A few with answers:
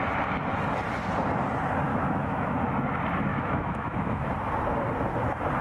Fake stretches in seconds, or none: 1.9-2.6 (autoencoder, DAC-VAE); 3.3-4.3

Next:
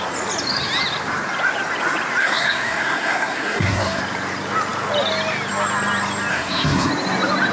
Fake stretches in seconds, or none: 2.2-4.0 (codec, SNAC); 6.3-6.9